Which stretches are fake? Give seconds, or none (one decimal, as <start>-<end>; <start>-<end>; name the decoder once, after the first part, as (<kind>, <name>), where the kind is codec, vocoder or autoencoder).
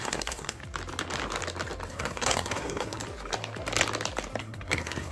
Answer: 0.0-0.6 (codec, SNAC); 1.9-3.0; 4.4-5.1